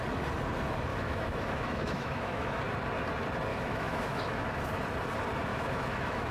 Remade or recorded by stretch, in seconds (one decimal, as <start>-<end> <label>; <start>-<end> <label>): 0.0-0.9 recorded; 0.9-2.6 remade; 2.6-3.5 recorded; 3.5-4.5 remade; 4.5-5.5 recorded; 5.5-6.3 remade